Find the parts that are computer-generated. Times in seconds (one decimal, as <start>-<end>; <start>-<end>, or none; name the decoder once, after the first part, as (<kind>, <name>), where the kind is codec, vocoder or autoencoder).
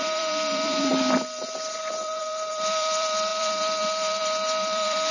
0.0-5.1 (vocoder, BigVGAN v2)